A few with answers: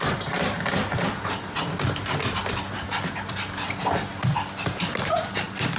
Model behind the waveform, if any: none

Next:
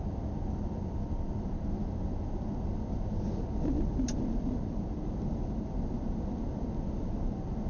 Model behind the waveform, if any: none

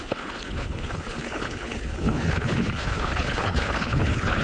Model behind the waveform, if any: codec, HILCodec